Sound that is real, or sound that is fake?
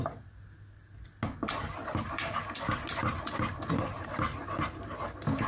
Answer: real